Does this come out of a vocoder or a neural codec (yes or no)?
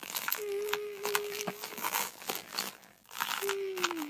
yes